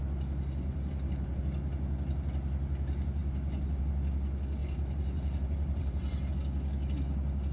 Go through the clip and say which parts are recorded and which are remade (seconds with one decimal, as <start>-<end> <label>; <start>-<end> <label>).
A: 0.0-0.7 recorded; 0.7-1.4 remade; 1.4-4.6 recorded; 4.6-6.3 remade; 6.3-7.5 recorded